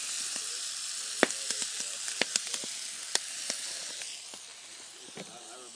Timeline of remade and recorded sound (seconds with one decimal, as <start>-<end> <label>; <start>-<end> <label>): 0.0-5.7 recorded